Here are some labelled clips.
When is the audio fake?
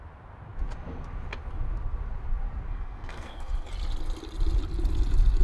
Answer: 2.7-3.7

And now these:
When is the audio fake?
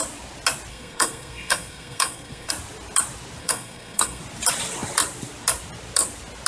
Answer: 0.7-2.5; 3.4-4.2